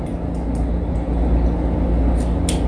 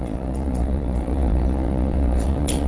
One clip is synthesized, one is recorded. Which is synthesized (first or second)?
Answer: second